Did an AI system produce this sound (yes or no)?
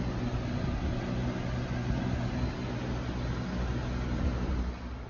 no